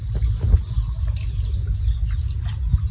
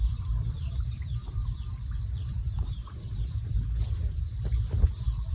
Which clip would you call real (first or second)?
first